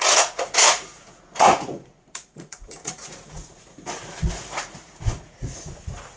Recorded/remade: remade